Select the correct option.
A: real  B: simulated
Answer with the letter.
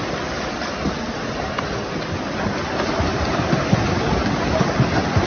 A